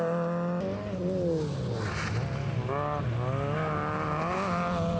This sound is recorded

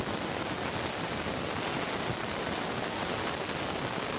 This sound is recorded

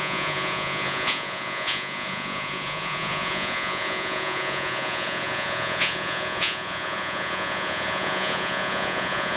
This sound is remade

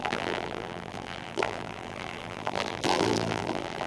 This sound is remade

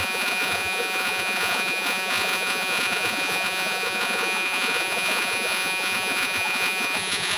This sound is remade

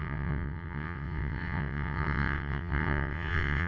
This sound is remade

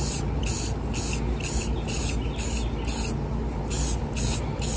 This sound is recorded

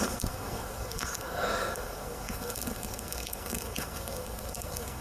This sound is remade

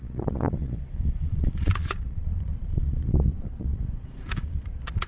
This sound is remade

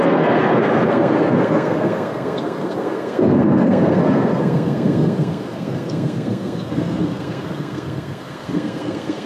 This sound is remade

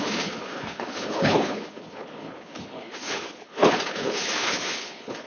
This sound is remade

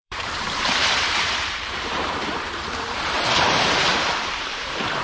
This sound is remade